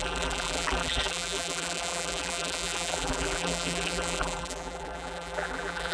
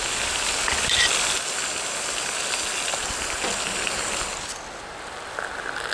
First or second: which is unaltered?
second